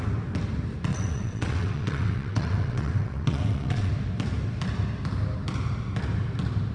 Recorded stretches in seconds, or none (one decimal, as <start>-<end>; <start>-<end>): 0.0-0.9; 3.9-6.7